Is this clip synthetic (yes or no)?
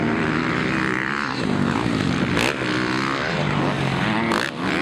no